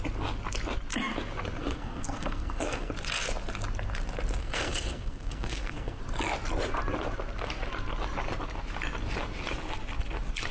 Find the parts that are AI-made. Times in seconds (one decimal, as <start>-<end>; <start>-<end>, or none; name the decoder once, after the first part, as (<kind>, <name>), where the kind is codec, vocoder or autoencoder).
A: 1.6-2.9 (codec, SNAC); 4.4-6.0